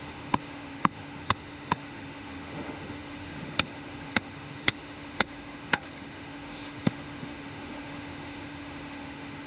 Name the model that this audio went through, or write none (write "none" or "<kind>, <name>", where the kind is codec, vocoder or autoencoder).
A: autoencoder, DAC-VAE